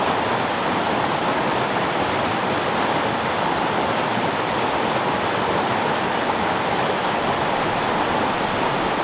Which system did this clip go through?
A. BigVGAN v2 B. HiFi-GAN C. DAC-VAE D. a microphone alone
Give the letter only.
D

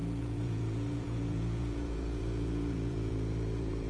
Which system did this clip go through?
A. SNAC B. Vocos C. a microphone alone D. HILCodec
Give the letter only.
B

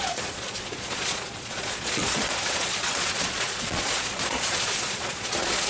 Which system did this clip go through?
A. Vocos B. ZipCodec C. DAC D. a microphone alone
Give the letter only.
A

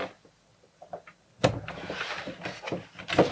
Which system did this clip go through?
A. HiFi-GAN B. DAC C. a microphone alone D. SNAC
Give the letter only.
C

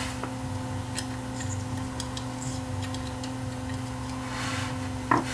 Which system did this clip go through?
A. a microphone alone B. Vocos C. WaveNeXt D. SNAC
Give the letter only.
A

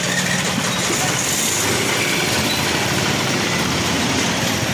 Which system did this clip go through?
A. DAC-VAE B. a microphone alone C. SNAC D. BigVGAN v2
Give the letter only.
B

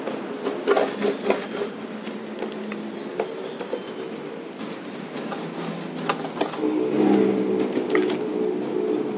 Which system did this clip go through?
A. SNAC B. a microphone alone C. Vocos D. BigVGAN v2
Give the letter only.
B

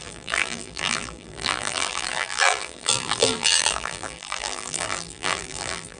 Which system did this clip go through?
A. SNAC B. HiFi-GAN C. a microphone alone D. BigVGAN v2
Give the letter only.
D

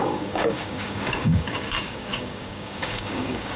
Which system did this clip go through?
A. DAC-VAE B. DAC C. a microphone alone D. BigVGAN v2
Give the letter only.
B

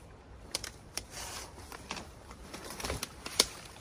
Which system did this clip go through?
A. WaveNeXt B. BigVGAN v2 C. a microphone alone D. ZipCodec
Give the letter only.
B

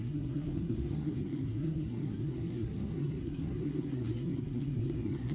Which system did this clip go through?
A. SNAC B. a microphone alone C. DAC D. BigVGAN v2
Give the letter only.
A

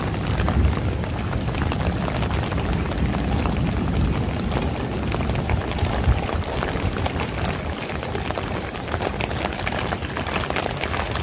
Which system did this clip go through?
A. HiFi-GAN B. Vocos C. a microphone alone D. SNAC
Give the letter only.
C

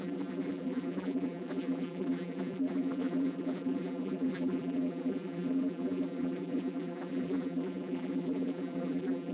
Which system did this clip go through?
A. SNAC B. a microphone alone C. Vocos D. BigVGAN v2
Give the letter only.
D